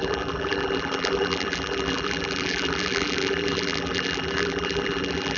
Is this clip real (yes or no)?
no